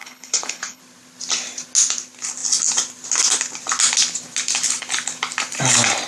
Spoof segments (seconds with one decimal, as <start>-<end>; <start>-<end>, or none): 0.0-0.8